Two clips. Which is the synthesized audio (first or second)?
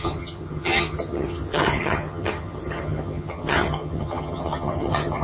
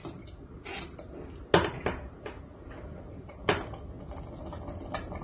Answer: first